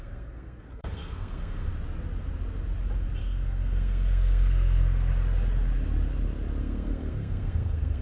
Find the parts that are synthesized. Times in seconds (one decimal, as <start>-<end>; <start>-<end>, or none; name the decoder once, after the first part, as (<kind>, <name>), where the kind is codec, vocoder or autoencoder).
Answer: 0.0-1.7 (codec, SNAC); 3.2-5.1; 6.6-8.0